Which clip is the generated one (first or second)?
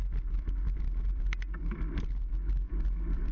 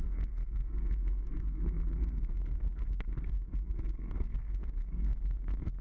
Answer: second